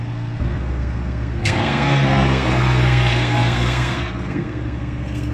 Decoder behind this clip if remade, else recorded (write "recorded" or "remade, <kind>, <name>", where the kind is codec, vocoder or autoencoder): remade, codec, SNAC